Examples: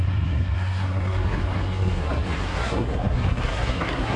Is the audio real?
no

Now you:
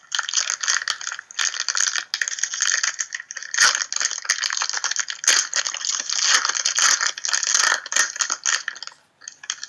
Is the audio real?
yes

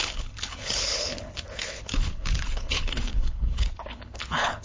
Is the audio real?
no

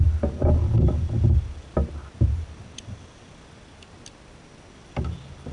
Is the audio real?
yes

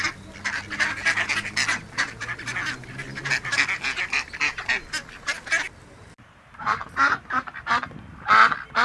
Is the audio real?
yes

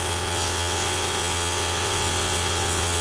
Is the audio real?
no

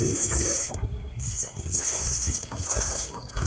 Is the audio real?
no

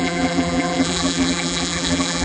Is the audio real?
no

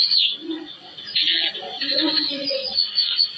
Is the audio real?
no